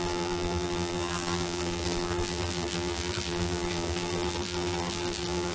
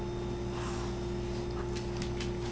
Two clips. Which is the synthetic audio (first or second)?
first